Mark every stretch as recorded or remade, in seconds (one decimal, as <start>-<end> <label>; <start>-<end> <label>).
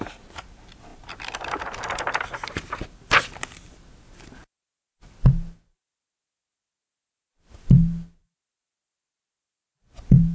0.0-10.3 recorded